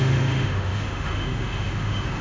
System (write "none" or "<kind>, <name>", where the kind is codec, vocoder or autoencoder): autoencoder, DAC-VAE